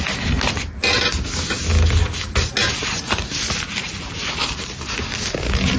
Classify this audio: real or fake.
real